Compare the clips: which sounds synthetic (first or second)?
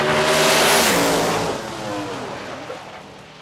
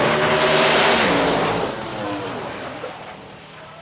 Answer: second